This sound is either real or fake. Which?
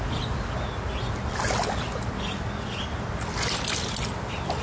real